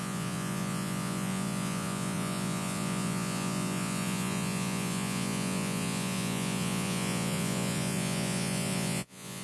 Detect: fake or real fake